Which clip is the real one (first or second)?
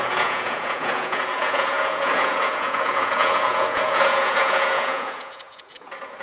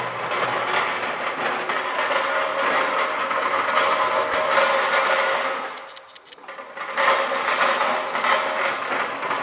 second